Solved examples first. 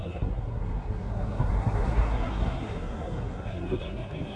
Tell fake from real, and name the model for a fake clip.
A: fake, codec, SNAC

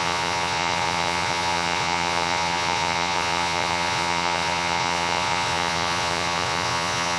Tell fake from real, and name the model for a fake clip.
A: fake, vocoder, Vocos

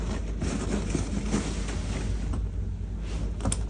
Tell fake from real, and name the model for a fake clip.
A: real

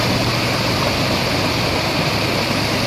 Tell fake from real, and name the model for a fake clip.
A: real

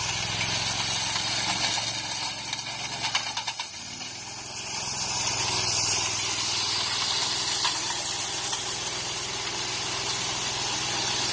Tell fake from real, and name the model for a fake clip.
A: real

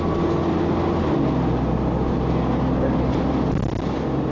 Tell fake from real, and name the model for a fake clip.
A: real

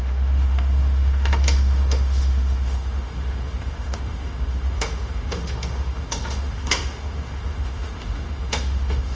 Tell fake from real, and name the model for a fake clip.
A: fake, autoencoder, DAC-VAE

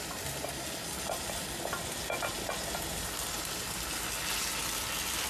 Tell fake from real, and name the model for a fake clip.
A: real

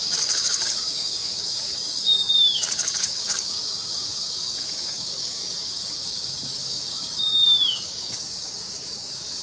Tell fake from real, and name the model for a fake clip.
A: fake, codec, DAC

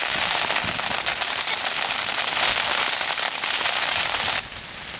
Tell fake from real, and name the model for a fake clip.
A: real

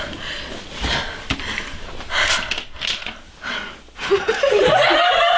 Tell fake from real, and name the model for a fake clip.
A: real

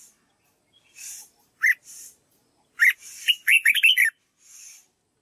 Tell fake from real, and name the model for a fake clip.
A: real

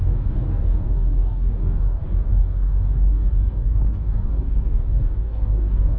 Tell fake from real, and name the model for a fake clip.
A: fake, codec, DAC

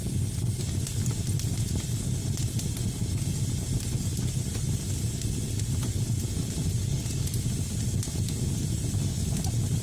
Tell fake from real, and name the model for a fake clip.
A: real